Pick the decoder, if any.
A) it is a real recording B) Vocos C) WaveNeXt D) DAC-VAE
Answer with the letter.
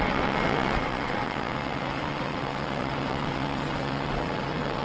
C